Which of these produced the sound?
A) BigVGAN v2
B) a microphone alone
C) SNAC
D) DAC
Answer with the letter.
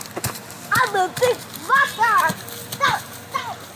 B